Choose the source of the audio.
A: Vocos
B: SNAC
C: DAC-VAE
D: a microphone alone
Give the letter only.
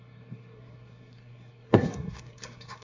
B